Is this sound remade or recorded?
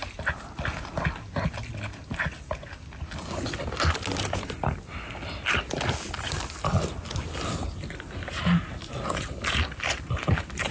recorded